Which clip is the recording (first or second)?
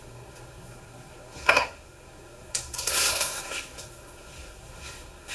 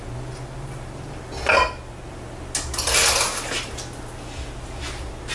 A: second